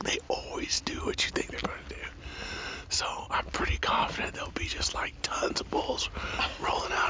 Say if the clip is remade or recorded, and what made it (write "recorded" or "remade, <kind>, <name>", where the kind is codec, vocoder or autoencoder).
recorded